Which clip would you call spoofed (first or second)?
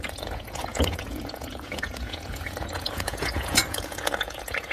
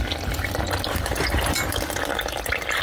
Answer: first